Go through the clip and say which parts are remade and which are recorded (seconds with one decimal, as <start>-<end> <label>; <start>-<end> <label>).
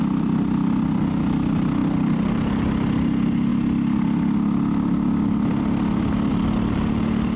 0.0-7.4 recorded